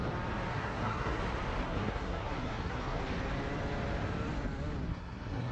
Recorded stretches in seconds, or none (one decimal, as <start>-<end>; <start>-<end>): 0.0-0.5; 1.2-1.6; 3.0-4.9